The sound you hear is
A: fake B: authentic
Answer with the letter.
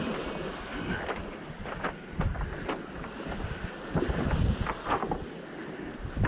B